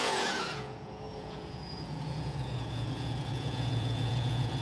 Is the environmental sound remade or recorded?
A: remade